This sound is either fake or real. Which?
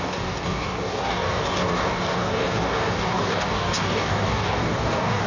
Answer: fake